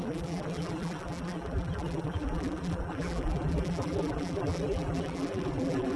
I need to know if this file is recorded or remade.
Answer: remade